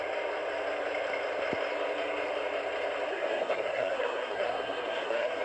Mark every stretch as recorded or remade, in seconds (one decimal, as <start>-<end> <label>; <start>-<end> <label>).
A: 0.0-3.1 recorded; 3.1-5.4 remade